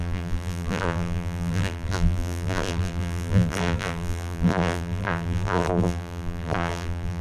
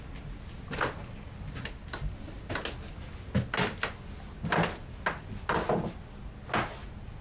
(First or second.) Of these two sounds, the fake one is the first